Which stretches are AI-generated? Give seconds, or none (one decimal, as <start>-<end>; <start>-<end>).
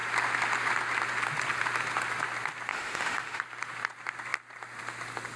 2.7-3.4